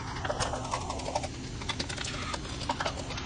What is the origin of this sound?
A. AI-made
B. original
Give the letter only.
B